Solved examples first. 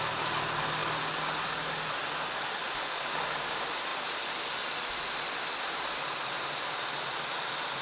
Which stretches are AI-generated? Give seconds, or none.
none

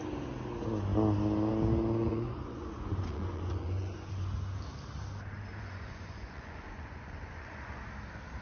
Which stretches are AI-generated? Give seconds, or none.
2.0-4.1 (vocoder, Vocos); 5.5-7.8

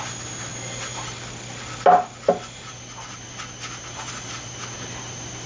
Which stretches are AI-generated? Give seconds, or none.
none

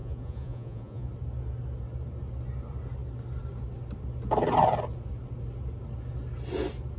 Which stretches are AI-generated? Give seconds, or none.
0.0-1.1 (vocoder, Vocos)

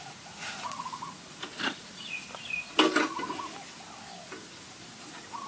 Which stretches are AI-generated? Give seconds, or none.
0.0-2.3 (vocoder, Vocos); 5.1-5.5